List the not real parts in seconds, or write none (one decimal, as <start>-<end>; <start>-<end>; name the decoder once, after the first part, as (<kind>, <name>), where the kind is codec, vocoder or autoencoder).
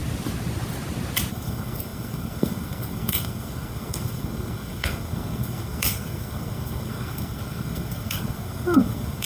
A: 1.3-9.3 (codec, SNAC)